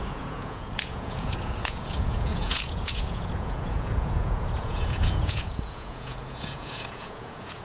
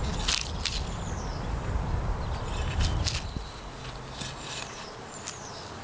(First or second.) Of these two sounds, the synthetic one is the first